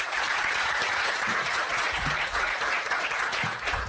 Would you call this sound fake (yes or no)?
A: yes